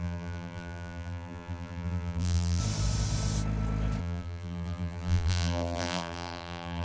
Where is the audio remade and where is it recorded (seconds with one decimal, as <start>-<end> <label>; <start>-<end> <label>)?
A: 0.0-2.6 remade; 2.6-4.0 recorded; 4.0-6.8 remade